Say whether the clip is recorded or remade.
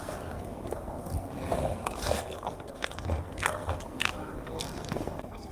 remade